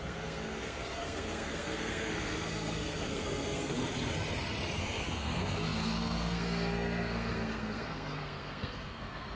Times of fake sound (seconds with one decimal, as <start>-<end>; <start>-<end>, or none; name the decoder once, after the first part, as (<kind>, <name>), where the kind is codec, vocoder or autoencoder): 0.0-3.8 (codec, SNAC); 4.8-9.4

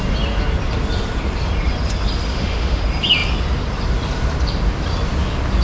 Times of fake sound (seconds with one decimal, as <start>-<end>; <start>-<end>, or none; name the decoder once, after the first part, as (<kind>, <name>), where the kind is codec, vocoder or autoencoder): 2.3-2.8 (autoencoder, DAC-VAE)

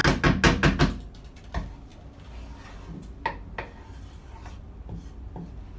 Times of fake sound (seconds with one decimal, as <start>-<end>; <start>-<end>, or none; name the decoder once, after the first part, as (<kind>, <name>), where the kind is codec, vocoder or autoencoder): none

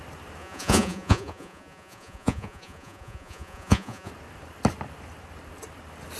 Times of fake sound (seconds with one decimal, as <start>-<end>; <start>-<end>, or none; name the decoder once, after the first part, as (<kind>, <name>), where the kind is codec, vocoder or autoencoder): 0.4-4.1 (vocoder, Vocos)

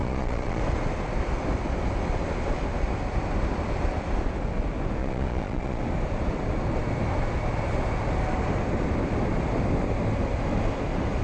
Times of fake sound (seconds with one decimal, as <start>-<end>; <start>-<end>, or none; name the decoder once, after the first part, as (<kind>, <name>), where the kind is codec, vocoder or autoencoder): 0.0-0.6 (vocoder, Vocos); 5.0-5.8

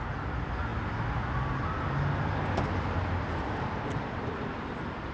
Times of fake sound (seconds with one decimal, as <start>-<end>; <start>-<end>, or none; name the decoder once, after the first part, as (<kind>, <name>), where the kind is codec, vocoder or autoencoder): none

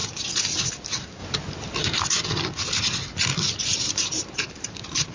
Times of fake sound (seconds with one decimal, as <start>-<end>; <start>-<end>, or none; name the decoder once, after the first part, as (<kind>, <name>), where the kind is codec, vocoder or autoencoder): 1.2-2.0 (vocoder, BigVGAN v2); 3.7-5.1

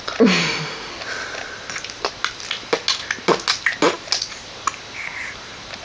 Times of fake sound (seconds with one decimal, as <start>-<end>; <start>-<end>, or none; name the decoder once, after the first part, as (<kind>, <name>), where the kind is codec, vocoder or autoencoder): 0.4-0.9 (autoencoder, DAC-VAE)